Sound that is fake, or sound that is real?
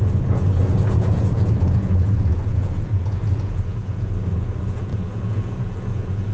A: fake